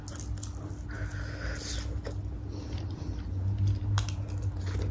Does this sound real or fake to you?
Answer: real